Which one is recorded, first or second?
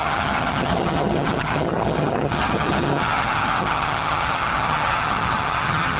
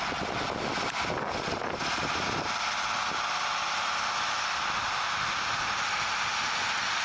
second